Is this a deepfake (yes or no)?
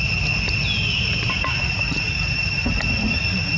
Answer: no